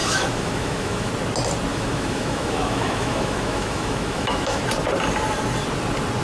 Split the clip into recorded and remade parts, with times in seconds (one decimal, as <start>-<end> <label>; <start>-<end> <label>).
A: 0.0-1.1 remade; 1.1-1.7 recorded; 1.7-4.6 remade; 4.6-6.2 recorded